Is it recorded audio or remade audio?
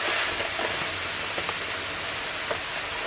recorded